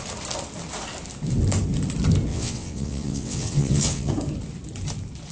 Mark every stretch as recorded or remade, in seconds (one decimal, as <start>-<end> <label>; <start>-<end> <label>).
0.0-2.3 recorded; 2.3-4.1 remade; 4.1-5.3 recorded